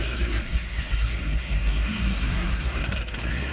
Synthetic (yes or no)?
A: yes